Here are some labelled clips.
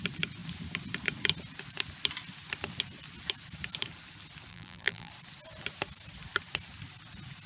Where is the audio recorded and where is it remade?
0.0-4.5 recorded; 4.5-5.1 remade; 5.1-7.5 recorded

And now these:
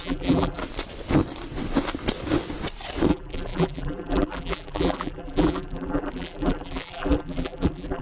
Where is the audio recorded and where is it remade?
0.0-0.6 remade; 0.6-3.1 recorded; 3.1-8.0 remade